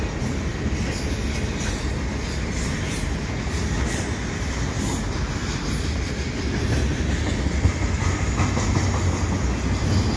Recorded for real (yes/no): yes